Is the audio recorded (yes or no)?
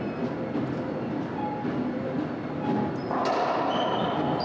yes